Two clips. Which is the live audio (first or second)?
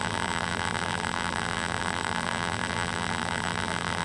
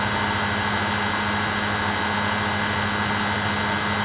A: second